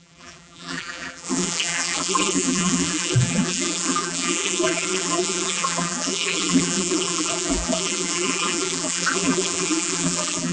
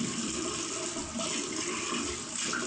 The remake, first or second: first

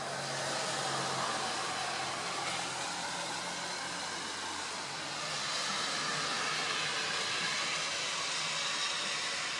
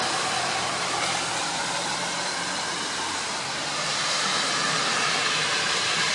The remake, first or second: second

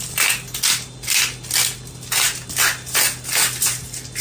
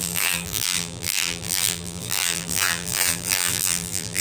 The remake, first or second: second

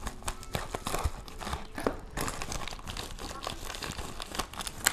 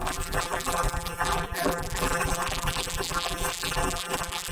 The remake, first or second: second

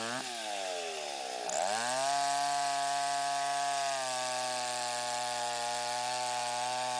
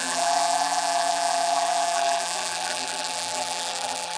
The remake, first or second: second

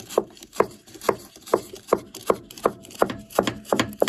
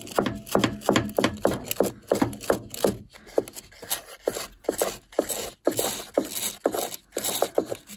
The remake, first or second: first